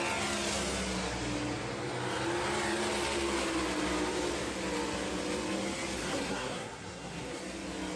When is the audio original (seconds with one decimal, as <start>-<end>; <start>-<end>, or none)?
0.0-6.0; 7.4-8.0